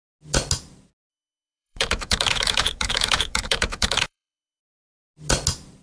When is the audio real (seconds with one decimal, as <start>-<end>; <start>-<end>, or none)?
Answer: 0.0-1.1; 4.6-5.8